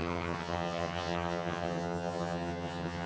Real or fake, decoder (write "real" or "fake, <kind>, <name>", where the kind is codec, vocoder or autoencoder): fake, vocoder, HiFi-GAN